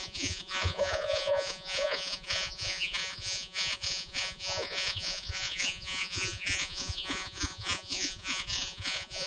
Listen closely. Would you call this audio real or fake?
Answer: fake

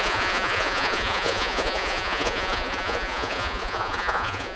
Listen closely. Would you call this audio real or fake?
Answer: fake